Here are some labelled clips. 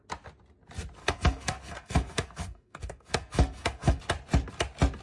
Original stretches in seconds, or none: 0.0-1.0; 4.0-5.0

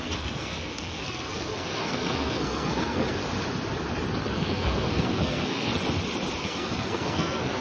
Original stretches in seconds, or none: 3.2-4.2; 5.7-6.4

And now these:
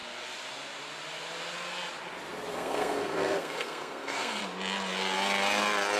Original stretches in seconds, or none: 0.0-2.5; 4.4-6.0

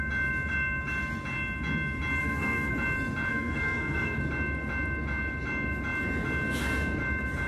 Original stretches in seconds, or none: 0.0-2.2; 2.7-3.3; 4.2-7.5

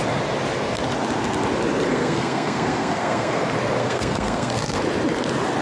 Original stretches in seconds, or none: 0.0-1.9; 3.4-3.8; 4.8-5.6

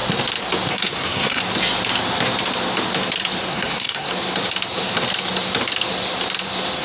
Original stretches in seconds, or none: 0.0-0.7; 1.4-3.5; 4.1-6.8

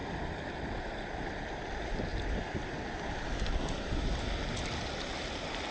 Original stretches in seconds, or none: 0.0-5.7